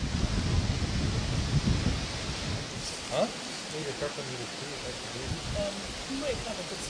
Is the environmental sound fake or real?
real